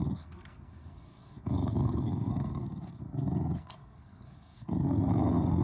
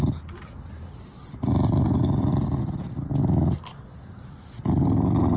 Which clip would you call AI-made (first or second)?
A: first